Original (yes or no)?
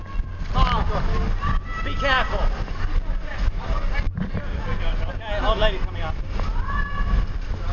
yes